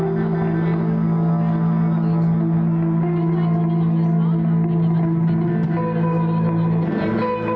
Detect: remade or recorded recorded